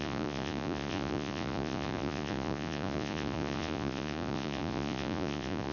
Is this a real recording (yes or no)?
no